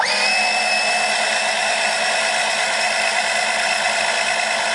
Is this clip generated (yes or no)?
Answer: no